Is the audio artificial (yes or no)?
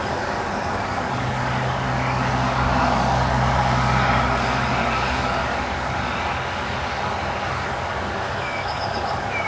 yes